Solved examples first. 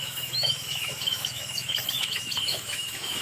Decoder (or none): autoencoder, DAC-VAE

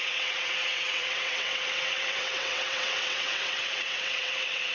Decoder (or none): vocoder, WaveNeXt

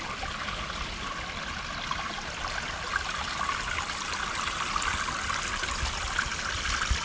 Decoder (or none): none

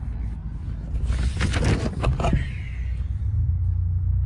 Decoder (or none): none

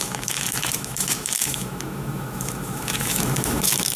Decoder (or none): autoencoder, DAC-VAE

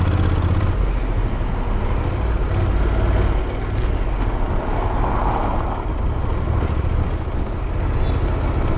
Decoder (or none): none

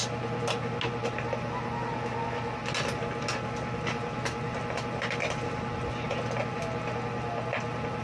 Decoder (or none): none